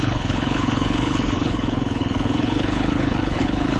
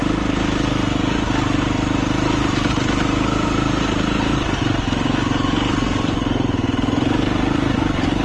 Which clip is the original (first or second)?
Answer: second